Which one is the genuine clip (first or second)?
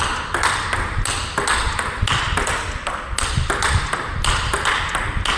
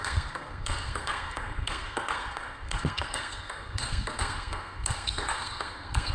first